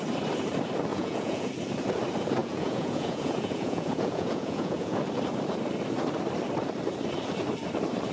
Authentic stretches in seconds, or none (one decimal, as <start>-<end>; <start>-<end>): 0.0-0.9; 1.5-2.4; 5.0-8.1